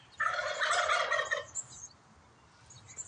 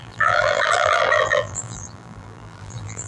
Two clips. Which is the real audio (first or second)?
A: first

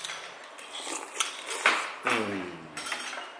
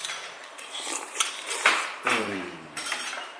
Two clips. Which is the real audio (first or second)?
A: first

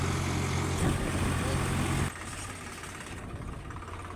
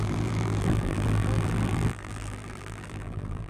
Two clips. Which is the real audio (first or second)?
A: first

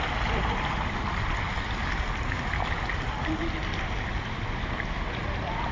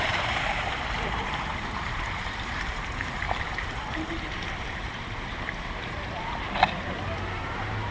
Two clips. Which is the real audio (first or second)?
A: first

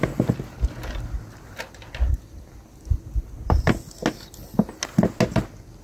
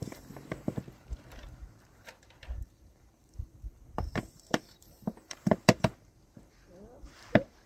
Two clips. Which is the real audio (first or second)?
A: first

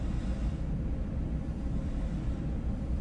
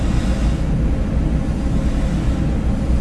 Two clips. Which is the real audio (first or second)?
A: second